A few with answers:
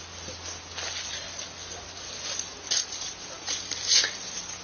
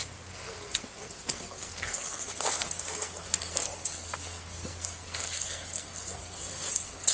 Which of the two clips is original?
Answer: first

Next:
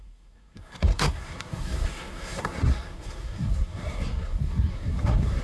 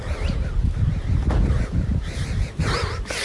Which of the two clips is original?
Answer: second